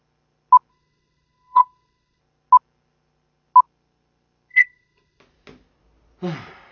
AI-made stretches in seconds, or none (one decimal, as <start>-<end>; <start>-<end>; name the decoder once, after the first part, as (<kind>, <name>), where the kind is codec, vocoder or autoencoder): 0.7-2.2 (codec, HILCodec); 4.5-5.2